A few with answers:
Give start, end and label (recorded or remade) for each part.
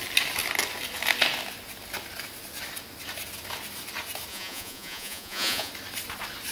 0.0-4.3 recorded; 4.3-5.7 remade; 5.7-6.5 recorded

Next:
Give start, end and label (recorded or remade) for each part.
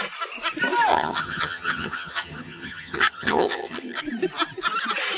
0.0-0.9 recorded; 0.9-4.0 remade; 4.0-5.2 recorded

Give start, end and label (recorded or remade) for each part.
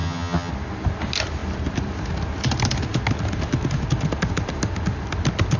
0.0-0.5 remade; 0.5-5.6 recorded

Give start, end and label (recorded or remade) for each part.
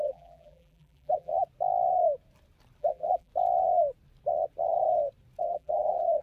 0.0-1.3 remade; 1.3-2.8 recorded; 2.8-3.3 remade; 3.3-5.4 recorded; 5.4-6.2 remade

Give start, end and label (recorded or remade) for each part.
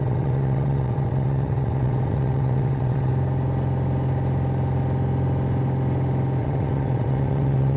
0.0-3.1 remade; 3.1-6.4 recorded; 6.4-7.8 remade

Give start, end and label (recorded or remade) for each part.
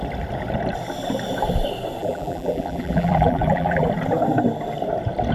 0.0-2.0 recorded; 2.0-3.9 remade; 3.9-5.3 recorded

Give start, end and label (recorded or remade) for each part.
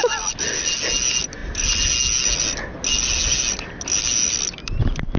0.0-5.2 recorded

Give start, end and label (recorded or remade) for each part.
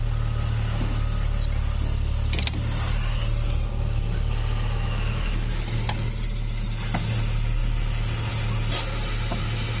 0.0-9.8 recorded